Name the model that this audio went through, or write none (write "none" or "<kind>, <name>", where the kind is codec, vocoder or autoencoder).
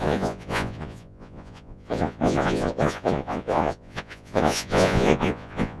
vocoder, Vocos